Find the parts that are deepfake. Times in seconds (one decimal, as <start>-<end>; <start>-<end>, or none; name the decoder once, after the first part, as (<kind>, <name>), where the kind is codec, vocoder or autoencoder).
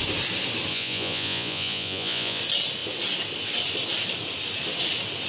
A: 0.7-2.4 (vocoder, Vocos)